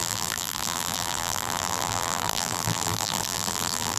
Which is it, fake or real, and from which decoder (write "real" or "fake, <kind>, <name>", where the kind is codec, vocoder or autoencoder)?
fake, vocoder, BigVGAN v2